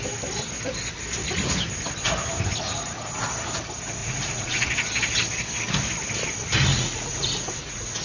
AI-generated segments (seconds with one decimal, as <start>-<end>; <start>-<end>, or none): 4.0-4.7; 6.7-8.0

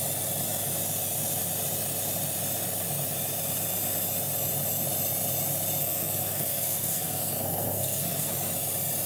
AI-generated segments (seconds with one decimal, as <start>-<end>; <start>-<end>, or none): 5.8-8.3

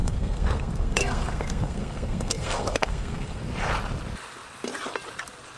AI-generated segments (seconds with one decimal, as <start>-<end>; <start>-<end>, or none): 0.0-3.4

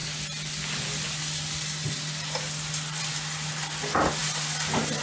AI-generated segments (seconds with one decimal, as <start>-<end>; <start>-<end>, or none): none

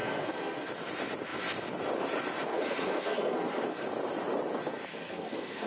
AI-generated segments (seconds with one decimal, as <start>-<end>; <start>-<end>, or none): 0.0-0.7; 2.5-3.6; 4.9-5.7

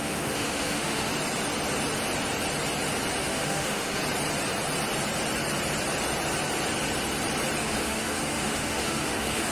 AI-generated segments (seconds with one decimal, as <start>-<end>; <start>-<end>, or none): 0.0-1.1; 3.2-4.0; 7.6-9.5

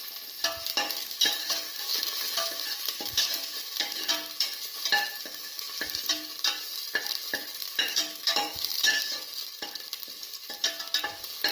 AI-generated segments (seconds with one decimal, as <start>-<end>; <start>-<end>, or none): 0.7-4.1; 5.1-5.7; 7.6-9.0

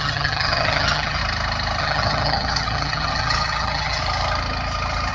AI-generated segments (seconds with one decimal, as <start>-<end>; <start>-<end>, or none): 0.0-1.2; 1.8-4.0